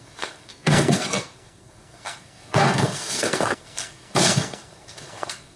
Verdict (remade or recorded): remade